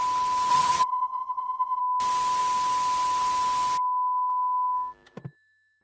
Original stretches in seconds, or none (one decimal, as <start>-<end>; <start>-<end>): 0.0-0.5; 1.8-5.8